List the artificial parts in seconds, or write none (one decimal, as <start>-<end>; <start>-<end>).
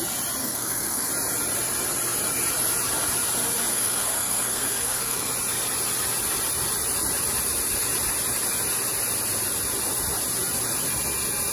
0.4-1.1; 3.7-5.3